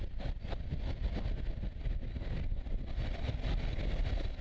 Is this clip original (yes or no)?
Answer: yes